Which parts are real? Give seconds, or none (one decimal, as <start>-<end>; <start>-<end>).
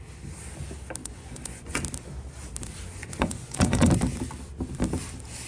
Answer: 0.0-1.0; 1.8-3.0; 3.9-5.5